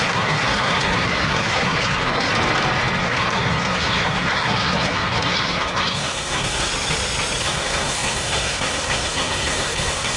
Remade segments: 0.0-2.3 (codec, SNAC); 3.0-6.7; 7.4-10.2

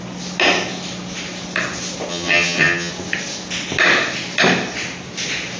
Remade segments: 2.1-2.9 (vocoder, HiFi-GAN)

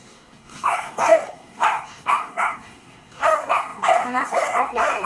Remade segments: 0.0-5.1 (codec, SNAC)

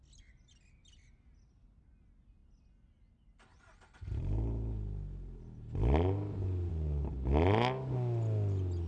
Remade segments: none

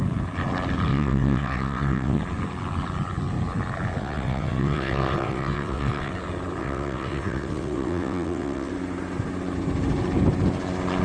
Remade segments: 0.9-2.2 (vocoder, WaveNeXt); 4.0-6.1; 6.6-8.7

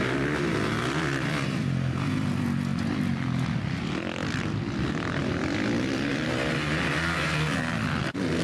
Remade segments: none